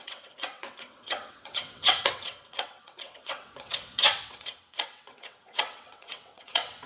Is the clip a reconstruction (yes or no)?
yes